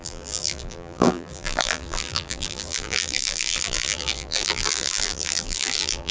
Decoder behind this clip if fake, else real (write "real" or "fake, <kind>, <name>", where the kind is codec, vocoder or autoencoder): fake, vocoder, BigVGAN v2